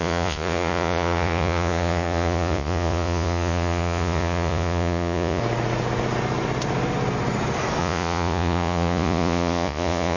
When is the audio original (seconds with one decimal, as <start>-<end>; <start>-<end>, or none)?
5.4-7.8